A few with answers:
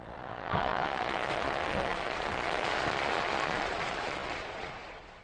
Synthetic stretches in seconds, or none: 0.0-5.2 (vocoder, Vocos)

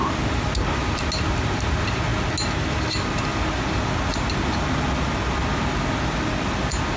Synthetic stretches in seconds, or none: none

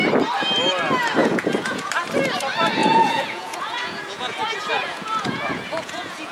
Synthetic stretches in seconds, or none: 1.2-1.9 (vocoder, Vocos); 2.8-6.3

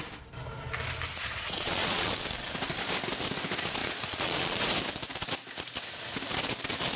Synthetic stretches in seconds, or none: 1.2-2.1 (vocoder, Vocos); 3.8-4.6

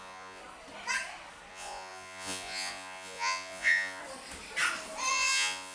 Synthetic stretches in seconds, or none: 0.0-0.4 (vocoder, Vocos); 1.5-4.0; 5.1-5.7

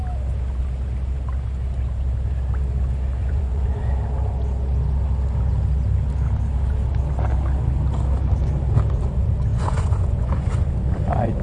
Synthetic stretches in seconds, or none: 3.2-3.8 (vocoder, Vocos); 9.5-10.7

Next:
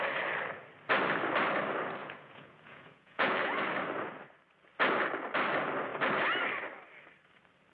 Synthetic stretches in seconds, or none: 2.0-3.6 (vocoder, Vocos)